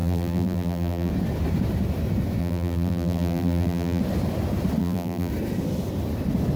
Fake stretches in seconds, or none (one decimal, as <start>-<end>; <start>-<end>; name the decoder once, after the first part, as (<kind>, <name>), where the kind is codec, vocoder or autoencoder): 0.0-1.1 (vocoder, BigVGAN v2); 2.4-4.0; 4.8-5.3